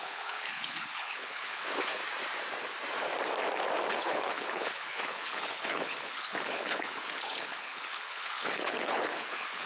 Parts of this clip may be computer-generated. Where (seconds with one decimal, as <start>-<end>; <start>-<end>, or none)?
0.0-2.0; 3.9-9.7